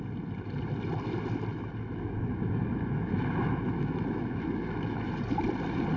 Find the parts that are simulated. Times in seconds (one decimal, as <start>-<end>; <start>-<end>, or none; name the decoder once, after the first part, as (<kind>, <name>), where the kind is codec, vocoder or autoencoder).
1.5-5.1 (autoencoder, DAC-VAE)